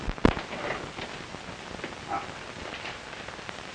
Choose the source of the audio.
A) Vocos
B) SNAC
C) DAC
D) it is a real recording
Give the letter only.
D